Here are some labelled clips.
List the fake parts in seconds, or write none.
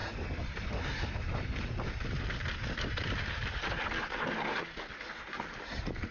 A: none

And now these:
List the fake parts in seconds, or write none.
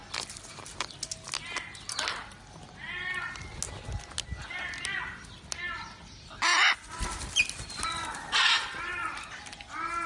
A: 0.0-0.5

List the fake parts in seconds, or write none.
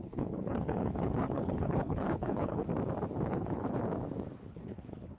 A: 0.0-2.7; 3.3-3.8; 4.4-5.2